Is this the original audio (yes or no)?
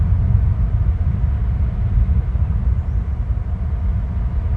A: yes